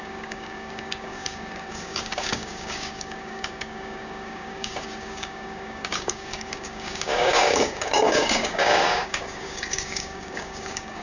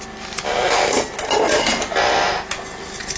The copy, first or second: first